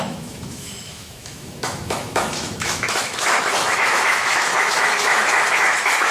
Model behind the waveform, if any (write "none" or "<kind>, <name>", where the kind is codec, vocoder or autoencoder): autoencoder, DAC-VAE